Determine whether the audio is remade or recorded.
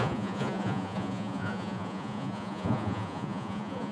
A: remade